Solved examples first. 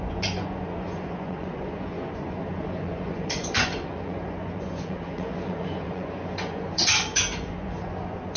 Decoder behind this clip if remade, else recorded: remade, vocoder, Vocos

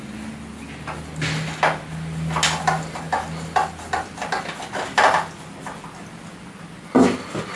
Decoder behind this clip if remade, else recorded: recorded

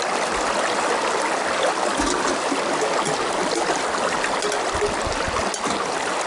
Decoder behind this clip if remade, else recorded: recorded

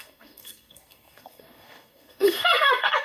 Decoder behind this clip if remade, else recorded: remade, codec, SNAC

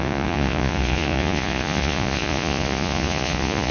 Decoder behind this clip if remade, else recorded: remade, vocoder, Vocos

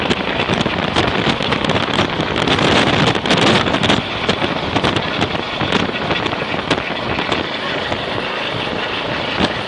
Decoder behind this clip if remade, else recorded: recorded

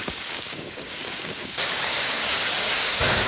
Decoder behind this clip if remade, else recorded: remade, codec, DAC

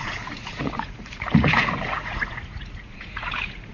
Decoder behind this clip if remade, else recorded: remade, vocoder, Vocos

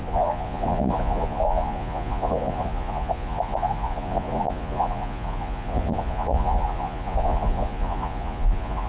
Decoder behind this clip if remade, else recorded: remade, vocoder, Vocos